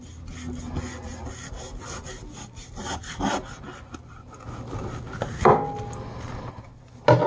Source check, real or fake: real